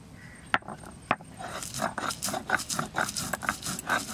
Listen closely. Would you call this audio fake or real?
real